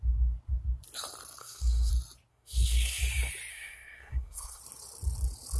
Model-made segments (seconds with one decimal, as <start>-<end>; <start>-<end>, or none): 1.4-1.9; 2.3-3.0; 3.5-4.6